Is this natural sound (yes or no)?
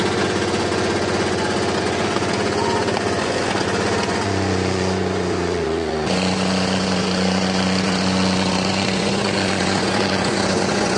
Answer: no